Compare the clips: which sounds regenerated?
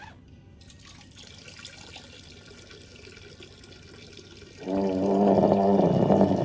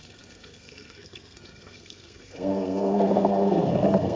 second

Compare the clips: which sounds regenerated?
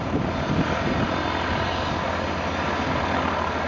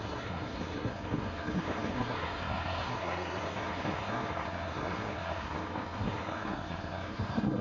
second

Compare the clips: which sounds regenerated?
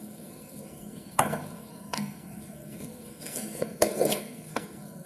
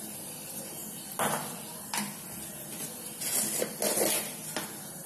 first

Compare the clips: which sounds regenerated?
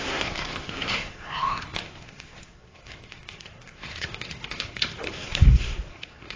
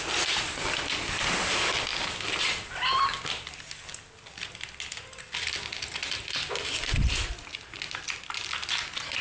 first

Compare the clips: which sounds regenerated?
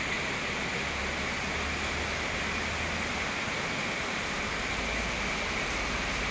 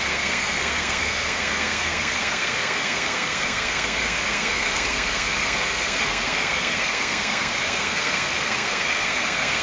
second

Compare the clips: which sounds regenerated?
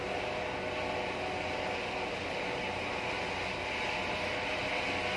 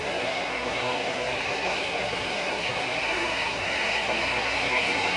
second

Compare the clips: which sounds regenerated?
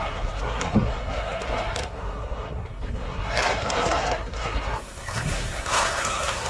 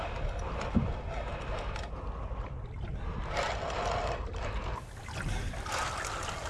first